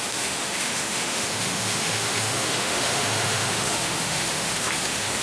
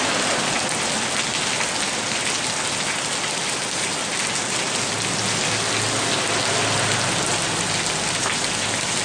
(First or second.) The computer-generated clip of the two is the first